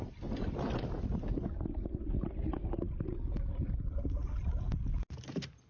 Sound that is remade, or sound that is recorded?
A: recorded